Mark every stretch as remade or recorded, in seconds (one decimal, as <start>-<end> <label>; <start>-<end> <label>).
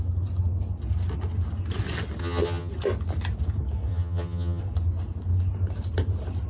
0.0-2.2 recorded; 2.2-2.7 remade; 2.7-3.9 recorded; 3.9-4.6 remade; 4.6-6.5 recorded